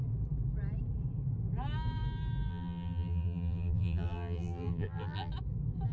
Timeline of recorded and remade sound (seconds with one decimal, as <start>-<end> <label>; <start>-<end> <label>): 0.0-2.5 recorded; 2.5-5.3 remade; 5.3-5.9 recorded